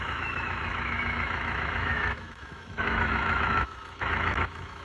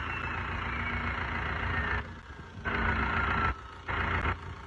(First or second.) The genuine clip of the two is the second